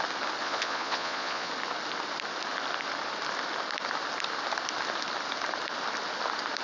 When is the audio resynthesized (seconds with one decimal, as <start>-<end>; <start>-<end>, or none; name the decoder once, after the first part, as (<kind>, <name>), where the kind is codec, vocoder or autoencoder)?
0.4-1.5 (vocoder, Vocos)